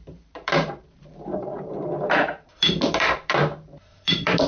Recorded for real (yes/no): no